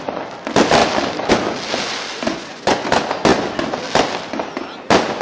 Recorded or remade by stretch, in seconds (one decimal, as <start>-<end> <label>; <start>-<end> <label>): 0.0-2.1 recorded; 2.1-2.9 remade; 2.9-5.2 recorded